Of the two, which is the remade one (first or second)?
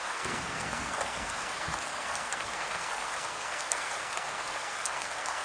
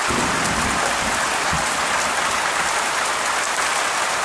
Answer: first